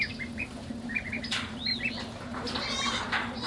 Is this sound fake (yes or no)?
no